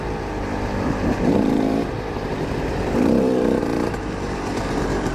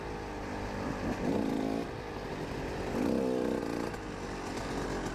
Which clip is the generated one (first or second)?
first